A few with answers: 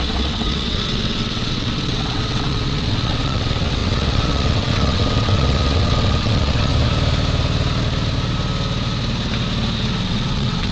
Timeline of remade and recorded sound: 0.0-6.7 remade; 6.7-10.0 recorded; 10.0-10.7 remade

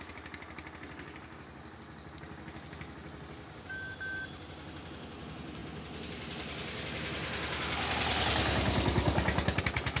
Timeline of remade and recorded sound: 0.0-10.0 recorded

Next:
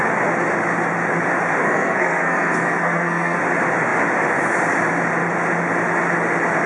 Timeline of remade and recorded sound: 0.0-1.6 recorded; 1.6-3.4 remade; 3.4-6.7 recorded